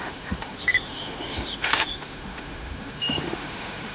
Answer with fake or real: fake